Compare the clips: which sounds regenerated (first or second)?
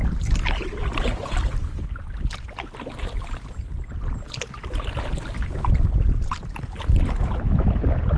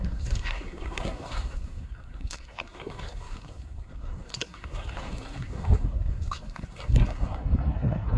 second